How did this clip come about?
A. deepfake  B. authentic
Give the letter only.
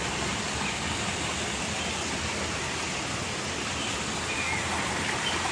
B